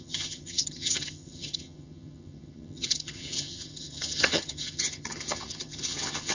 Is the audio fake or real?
fake